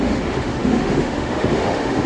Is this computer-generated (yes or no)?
yes